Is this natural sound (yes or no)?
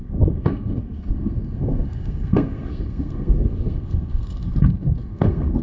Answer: no